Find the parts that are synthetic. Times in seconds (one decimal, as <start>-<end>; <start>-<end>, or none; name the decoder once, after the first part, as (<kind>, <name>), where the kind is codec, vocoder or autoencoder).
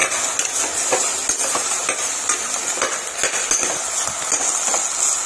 none